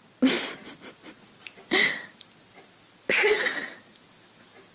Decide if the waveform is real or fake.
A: real